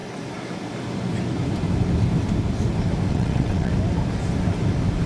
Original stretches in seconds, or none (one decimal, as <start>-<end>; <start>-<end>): 0.0-3.1; 3.7-5.1